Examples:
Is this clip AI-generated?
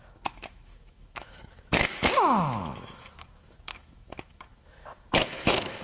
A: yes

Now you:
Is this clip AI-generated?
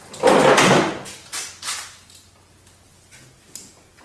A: no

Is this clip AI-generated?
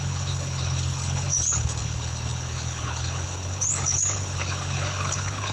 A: yes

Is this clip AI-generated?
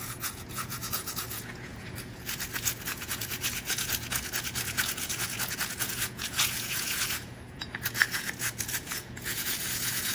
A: yes